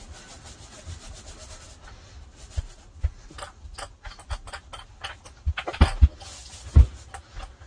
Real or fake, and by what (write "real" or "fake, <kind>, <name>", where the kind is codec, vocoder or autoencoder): real